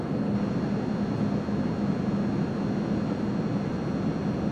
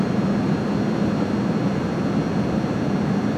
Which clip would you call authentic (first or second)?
first